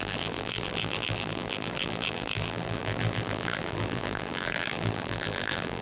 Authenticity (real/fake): fake